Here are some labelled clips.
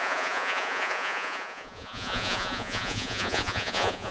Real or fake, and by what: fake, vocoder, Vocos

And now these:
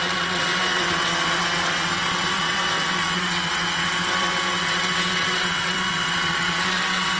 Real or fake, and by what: fake, vocoder, WaveNeXt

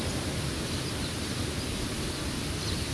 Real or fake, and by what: real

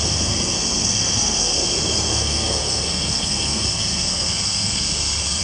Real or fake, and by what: fake, codec, SNAC